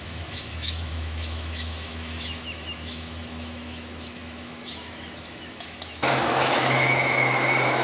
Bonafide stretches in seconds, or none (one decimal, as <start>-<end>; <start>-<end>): none